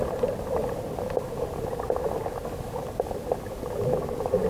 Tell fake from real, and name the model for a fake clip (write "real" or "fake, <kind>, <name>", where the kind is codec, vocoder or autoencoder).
real